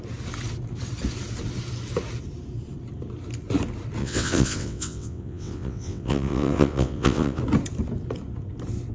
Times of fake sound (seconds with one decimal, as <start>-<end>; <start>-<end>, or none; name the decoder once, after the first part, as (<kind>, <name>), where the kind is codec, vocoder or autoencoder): 4.0-7.4 (vocoder, WaveNeXt)